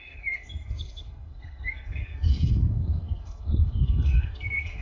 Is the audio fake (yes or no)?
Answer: yes